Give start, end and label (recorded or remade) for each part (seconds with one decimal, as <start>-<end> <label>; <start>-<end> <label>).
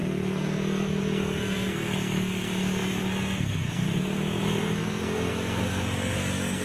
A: 0.0-6.6 remade